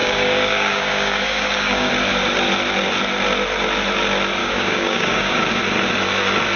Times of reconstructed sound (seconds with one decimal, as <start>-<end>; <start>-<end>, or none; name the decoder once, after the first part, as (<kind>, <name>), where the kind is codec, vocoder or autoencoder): 0.0-1.9 (codec, DAC); 4.4-5.4